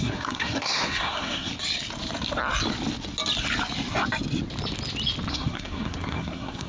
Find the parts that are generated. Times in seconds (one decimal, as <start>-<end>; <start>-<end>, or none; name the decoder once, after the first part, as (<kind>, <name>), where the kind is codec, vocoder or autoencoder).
0.0-1.5 (codec, SNAC); 5.3-6.7